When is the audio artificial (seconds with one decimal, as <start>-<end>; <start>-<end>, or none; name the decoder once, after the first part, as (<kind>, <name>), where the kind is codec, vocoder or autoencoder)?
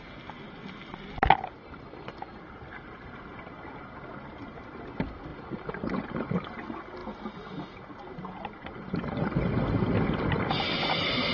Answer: 1.6-2.2 (vocoder, BigVGAN v2); 5.3-6.3